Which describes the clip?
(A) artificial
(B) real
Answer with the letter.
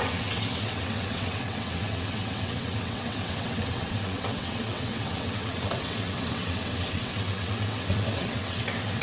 A